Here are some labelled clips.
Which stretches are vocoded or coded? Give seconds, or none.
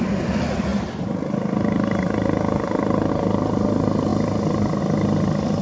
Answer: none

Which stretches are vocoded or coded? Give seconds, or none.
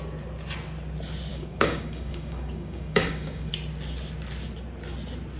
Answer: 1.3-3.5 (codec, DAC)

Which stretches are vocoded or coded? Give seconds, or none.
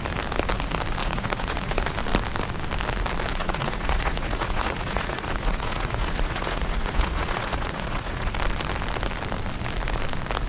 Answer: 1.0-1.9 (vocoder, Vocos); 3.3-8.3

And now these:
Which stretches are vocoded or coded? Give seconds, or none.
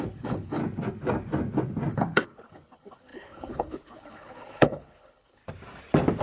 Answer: 0.0-0.6 (codec, HILCodec); 1.9-5.4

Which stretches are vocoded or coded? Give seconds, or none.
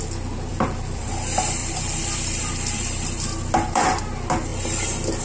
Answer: 0.5-1.1 (vocoder, BigVGAN v2); 1.6-4.0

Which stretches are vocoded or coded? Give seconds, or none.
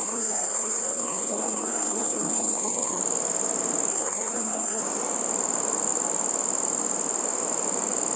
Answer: 0.0-3.0 (codec, SNAC); 3.9-4.8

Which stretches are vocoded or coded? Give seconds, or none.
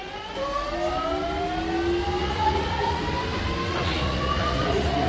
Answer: 2.2-3.0 (vocoder, Vocos); 3.7-5.1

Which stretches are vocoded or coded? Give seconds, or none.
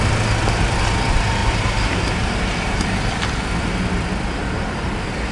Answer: none